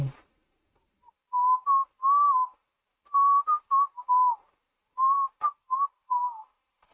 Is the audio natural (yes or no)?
yes